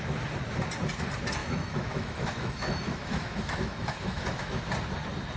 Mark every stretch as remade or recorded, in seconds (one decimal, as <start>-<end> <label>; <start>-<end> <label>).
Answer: 0.0-1.4 recorded; 1.4-4.6 remade; 4.6-5.4 recorded